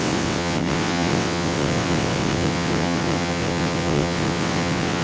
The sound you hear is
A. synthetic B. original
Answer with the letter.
A